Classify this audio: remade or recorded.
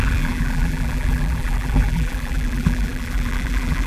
remade